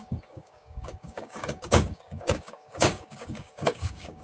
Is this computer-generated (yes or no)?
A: yes